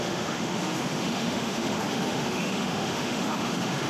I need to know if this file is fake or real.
fake